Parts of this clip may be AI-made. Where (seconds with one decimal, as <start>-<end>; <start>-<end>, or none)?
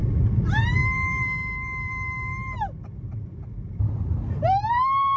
0.0-2.3; 3.8-5.2